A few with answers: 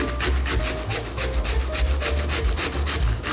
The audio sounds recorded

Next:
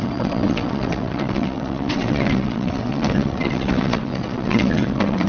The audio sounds remade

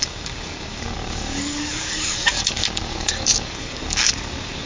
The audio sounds remade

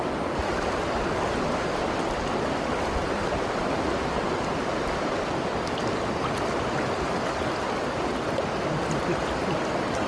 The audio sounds recorded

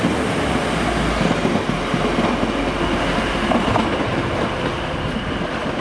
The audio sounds recorded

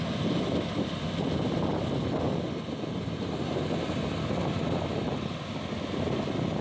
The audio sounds recorded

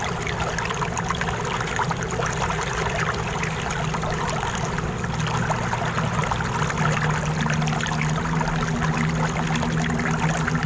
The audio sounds recorded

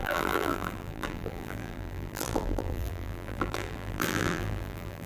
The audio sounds remade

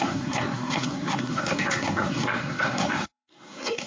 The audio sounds remade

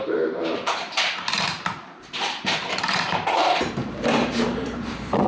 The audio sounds remade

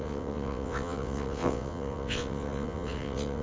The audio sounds remade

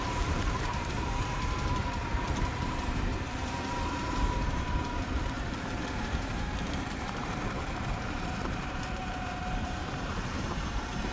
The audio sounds remade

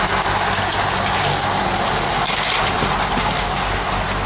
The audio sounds recorded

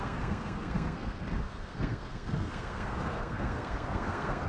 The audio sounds remade